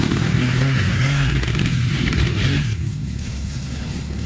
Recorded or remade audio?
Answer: remade